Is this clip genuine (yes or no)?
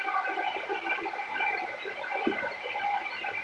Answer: yes